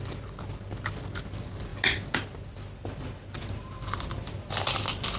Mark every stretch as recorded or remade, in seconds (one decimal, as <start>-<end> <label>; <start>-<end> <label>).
0.0-5.2 recorded